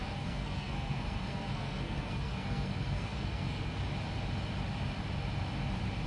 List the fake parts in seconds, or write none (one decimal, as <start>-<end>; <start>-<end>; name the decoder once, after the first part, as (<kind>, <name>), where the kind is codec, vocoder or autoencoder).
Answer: 0.0-3.7 (codec, SNAC)